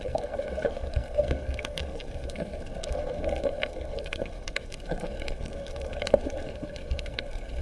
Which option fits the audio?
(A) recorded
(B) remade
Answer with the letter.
B